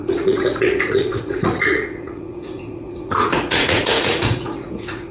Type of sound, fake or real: fake